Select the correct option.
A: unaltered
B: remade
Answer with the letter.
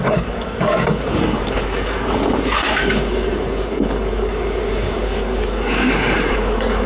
B